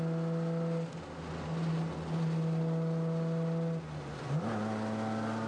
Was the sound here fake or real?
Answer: real